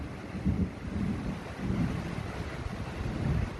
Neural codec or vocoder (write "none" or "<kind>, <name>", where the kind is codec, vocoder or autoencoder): none